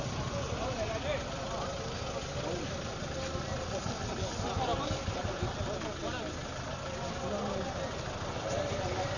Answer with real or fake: real